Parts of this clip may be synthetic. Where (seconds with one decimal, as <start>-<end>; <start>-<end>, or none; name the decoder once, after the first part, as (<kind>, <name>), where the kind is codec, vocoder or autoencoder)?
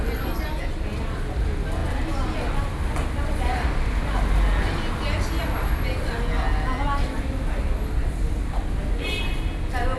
none